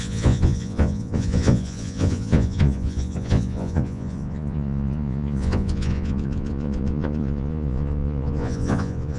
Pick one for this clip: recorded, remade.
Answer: remade